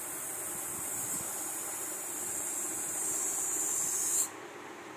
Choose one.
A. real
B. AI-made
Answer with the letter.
A